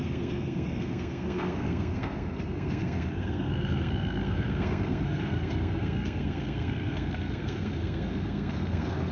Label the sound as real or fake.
fake